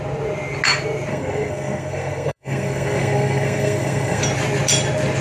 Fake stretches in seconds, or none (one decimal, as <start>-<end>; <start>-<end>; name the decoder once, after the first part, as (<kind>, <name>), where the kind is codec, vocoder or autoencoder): 1.1-4.2 (codec, SNAC)